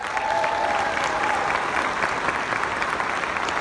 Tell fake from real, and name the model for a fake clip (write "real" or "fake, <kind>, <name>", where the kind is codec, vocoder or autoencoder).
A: real